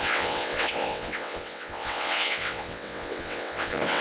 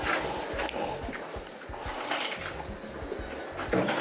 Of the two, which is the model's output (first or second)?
first